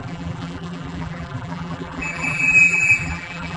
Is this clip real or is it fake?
fake